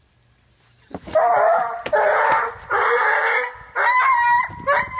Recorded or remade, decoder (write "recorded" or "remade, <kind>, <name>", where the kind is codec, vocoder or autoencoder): recorded